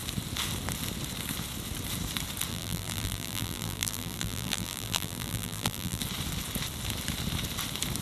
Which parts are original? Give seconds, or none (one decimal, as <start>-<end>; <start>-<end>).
0.0-2.5; 6.0-8.0